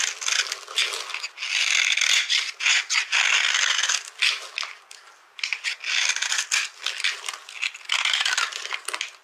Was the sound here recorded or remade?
recorded